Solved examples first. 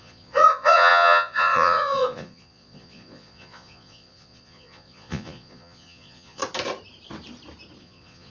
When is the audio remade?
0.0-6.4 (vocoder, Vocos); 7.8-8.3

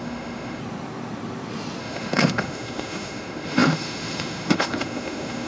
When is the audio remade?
0.0-0.6 (autoencoder, DAC-VAE); 1.8-5.5